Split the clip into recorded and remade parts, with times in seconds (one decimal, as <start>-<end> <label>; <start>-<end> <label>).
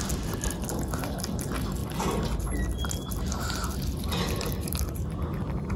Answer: 0.0-5.8 recorded